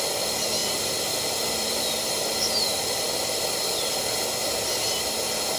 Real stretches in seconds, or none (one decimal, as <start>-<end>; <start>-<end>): 0.0-0.6; 4.0-4.4; 5.0-5.6